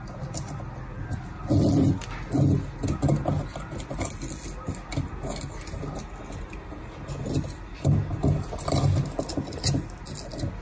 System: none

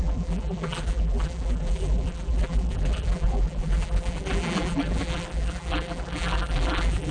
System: vocoder, BigVGAN v2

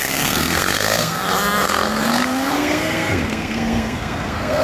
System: codec, SNAC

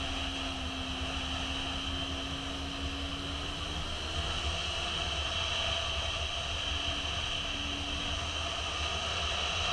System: none